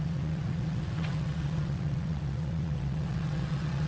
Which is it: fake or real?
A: fake